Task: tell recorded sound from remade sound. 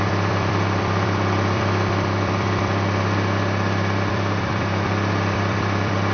remade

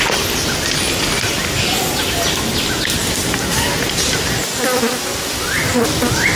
recorded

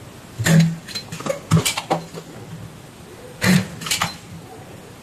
recorded